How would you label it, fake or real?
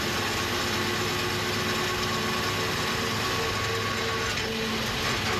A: real